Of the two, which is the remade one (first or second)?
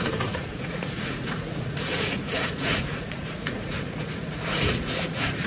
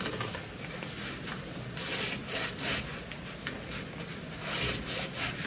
first